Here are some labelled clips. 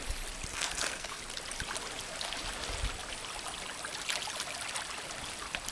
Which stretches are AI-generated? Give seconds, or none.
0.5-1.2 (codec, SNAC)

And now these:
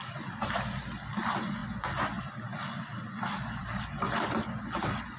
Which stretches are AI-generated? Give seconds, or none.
none

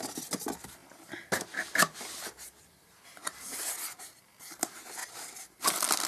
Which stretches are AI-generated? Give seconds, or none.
0.8-4.5 (vocoder, BigVGAN v2); 5.0-5.6

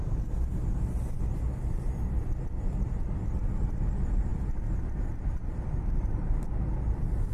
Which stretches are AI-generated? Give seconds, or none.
none